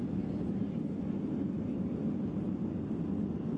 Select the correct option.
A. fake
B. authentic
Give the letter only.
B